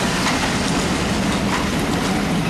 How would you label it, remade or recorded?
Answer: recorded